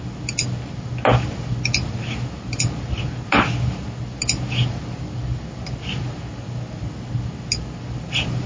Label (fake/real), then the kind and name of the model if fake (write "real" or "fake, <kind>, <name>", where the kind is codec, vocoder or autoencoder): real